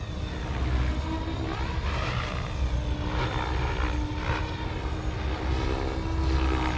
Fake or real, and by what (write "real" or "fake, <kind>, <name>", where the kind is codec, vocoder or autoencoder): real